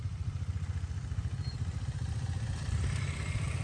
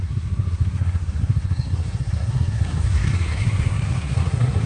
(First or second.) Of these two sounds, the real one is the first